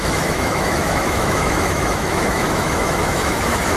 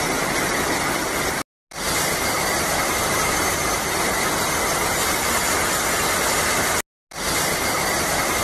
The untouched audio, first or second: second